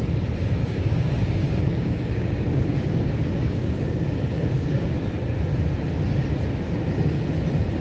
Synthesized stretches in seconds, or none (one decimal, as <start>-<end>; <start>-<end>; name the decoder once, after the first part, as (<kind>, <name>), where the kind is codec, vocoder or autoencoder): 0.6-4.9 (codec, DAC)